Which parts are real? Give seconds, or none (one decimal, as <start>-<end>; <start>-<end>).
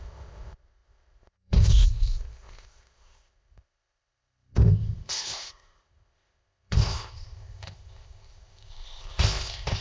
none